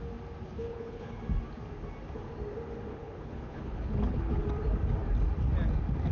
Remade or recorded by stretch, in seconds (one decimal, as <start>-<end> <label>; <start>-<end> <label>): 0.0-0.6 recorded; 0.6-1.2 remade; 1.2-2.9 recorded; 2.9-4.4 remade; 4.4-6.1 recorded